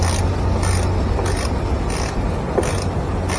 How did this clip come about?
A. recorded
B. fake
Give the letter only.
A